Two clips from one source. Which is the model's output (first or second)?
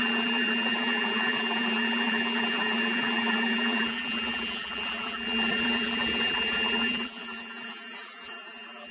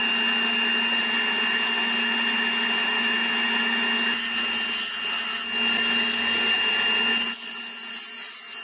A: first